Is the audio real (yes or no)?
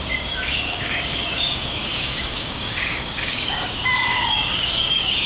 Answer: no